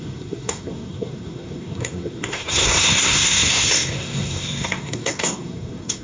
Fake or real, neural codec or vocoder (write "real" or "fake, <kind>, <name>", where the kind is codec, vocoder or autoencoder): fake, codec, SNAC